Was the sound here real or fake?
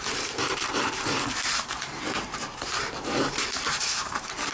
fake